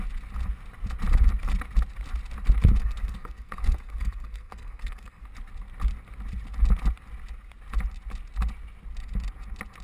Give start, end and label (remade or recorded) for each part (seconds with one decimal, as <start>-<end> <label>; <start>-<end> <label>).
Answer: 0.0-2.8 recorded; 2.8-5.2 remade; 5.2-9.8 recorded